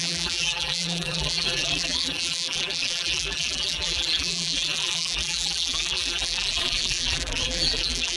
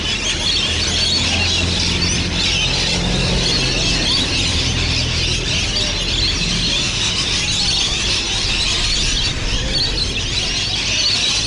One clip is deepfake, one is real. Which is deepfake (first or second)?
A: first